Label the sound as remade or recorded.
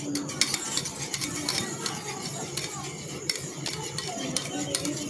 recorded